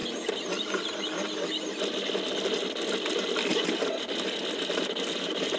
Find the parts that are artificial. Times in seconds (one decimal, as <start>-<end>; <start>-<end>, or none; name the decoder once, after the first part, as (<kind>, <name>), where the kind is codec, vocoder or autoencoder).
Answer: none